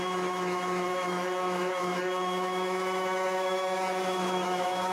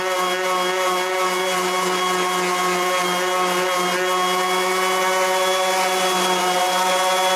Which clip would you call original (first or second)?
second